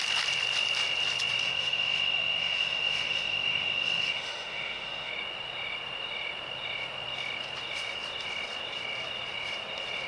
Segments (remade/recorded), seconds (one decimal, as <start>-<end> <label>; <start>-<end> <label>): 0.0-1.4 recorded; 1.4-5.1 remade; 5.1-10.1 recorded